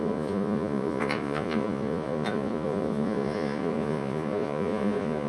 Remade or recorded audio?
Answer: remade